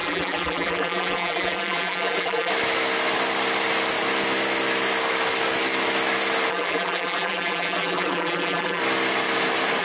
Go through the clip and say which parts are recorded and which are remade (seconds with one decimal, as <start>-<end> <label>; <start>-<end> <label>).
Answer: 0.0-2.5 remade; 2.5-6.5 recorded; 6.5-8.8 remade; 8.8-9.8 recorded